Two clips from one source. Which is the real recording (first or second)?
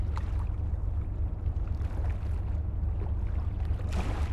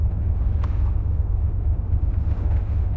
first